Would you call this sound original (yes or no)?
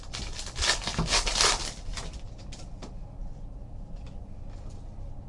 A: yes